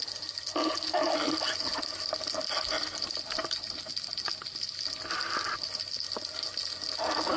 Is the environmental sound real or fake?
real